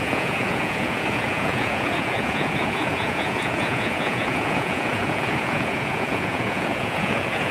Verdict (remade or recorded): remade